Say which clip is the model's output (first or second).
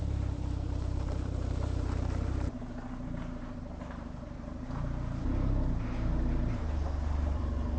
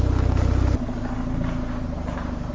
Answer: first